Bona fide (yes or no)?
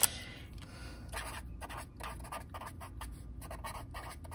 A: yes